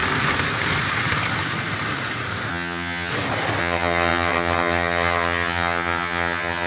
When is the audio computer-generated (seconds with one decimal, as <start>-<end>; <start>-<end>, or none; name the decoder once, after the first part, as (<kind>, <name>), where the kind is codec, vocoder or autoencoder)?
2.5-3.1 (vocoder, HiFi-GAN); 3.6-6.7